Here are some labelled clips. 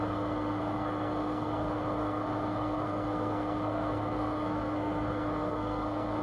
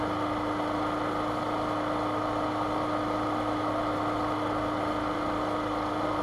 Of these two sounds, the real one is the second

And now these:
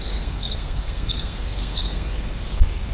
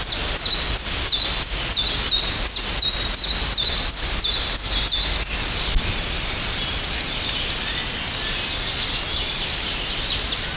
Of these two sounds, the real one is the second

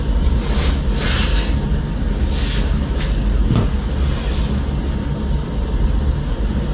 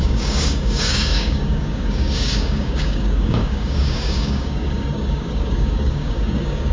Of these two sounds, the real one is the first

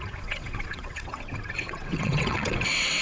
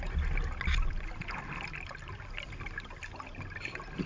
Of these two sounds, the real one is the second